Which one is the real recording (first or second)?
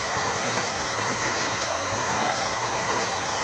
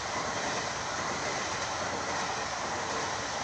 second